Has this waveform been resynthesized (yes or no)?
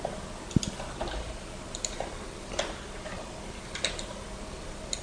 no